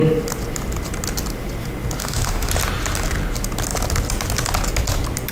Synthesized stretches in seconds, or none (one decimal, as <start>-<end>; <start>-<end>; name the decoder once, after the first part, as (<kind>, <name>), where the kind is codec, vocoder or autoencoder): 2.0-2.5 (autoencoder, DAC-VAE)